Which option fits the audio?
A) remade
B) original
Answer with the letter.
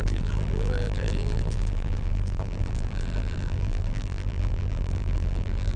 A